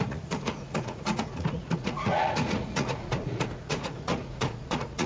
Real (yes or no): no